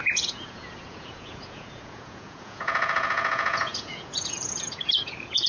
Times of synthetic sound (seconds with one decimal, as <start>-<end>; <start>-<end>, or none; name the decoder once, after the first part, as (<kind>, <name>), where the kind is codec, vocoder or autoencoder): 0.0-5.5 (vocoder, Vocos)